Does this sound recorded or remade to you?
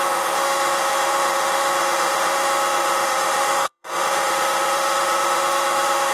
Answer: remade